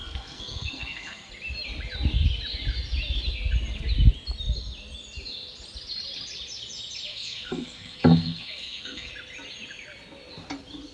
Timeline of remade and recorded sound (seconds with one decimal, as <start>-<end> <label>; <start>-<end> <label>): 0.0-1.3 remade; 1.3-7.1 recorded; 7.1-9.1 remade; 9.1-10.9 recorded

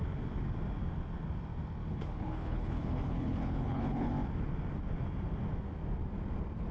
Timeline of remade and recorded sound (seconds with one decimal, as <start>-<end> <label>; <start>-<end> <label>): 0.0-1.9 recorded; 1.9-4.1 remade; 4.1-6.7 recorded

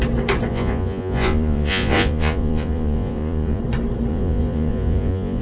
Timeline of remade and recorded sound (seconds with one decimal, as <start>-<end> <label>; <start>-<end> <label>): 0.0-0.5 recorded; 0.5-3.6 remade; 3.6-4.1 recorded; 4.1-5.4 remade

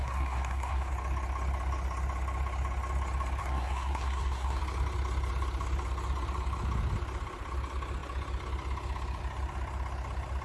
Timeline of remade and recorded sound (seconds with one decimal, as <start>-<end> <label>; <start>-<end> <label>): 0.0-0.9 remade; 0.9-3.4 recorded; 3.4-4.6 remade; 4.6-10.4 recorded

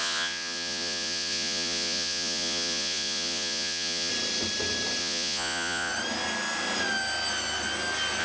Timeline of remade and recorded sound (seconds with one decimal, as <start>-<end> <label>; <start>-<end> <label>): 0.0-4.1 remade; 4.1-5.0 recorded; 5.0-5.9 remade; 5.9-8.2 recorded

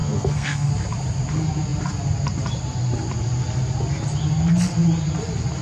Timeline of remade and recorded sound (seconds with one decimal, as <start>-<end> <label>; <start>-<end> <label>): 0.0-0.7 remade; 0.7-5.6 recorded

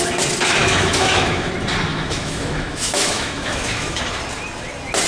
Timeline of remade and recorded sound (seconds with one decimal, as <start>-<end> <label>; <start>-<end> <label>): 0.0-0.6 recorded; 0.6-1.5 remade; 1.5-1.9 recorded; 1.9-4.0 remade; 4.0-5.1 recorded

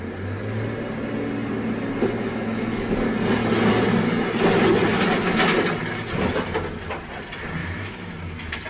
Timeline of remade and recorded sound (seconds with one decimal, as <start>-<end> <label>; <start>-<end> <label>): 0.0-2.2 recorded; 2.2-2.9 remade; 2.9-7.6 recorded; 7.6-8.1 remade; 8.1-8.7 recorded